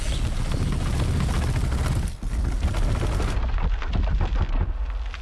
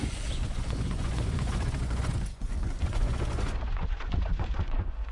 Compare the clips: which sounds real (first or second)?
first